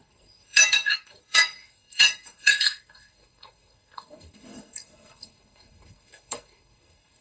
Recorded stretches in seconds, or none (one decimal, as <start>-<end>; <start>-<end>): none

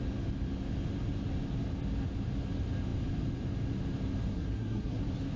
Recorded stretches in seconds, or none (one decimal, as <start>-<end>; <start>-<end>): 0.0-4.3; 5.0-5.4

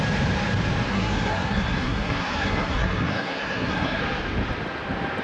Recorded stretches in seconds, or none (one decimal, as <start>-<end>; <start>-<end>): 0.0-0.9; 4.0-5.2

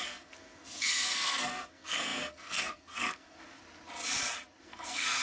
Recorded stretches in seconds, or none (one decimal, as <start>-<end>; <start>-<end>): 3.6-4.6

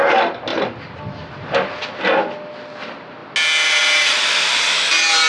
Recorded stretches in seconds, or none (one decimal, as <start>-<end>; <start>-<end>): 0.0-5.3

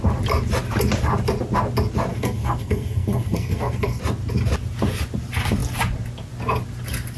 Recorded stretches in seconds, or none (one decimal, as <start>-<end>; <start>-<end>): 0.0-2.1; 4.0-7.2

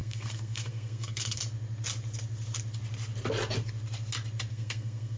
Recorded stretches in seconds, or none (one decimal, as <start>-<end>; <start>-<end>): 1.4-4.5

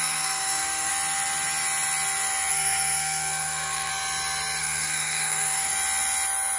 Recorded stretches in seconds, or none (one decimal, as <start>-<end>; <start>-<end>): 0.9-2.5; 3.9-4.6; 5.7-6.6